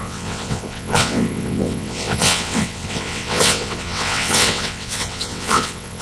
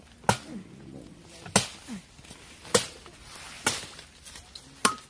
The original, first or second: second